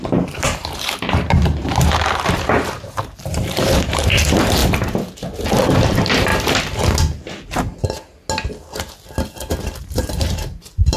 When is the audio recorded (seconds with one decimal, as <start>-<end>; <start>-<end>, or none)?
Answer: 4.6-5.5; 6.3-9.8